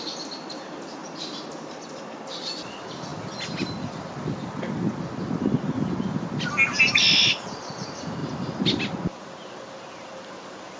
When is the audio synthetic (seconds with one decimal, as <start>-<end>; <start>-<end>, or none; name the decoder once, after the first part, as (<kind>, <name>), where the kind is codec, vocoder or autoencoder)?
none